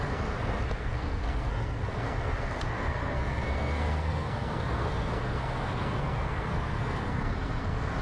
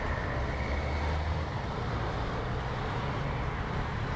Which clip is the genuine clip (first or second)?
second